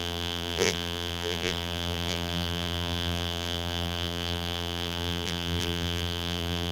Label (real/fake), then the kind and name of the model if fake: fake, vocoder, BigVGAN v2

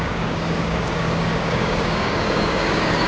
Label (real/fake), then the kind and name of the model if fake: fake, codec, DAC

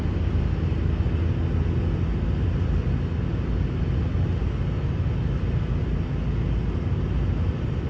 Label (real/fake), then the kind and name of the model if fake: real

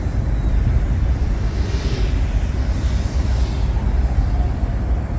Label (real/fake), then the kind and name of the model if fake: real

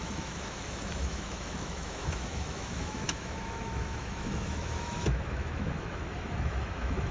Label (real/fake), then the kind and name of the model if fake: fake, autoencoder, DAC-VAE